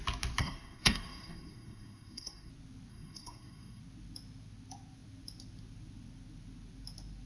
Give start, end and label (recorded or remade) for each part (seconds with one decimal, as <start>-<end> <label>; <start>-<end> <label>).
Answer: 0.0-0.4 recorded; 0.4-2.5 remade; 2.5-2.9 recorded; 2.9-3.8 remade; 3.8-7.3 recorded